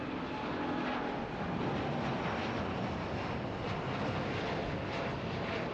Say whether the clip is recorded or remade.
recorded